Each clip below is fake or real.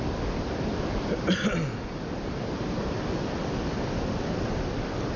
real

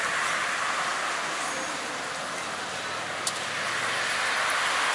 real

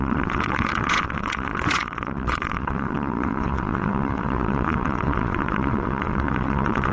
fake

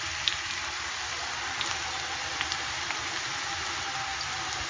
real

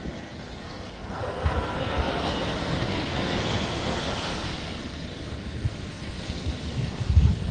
fake